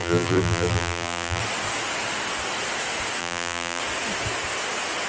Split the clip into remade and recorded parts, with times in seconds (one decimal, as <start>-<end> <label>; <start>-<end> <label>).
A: 0.0-1.4 remade; 1.4-3.2 recorded; 3.2-3.8 remade; 3.8-5.1 recorded